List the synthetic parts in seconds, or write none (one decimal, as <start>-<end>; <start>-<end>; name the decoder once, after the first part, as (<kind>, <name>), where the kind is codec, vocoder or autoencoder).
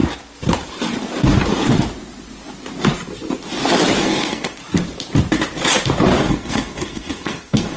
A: 4.0-4.6 (codec, SNAC); 6.2-7.8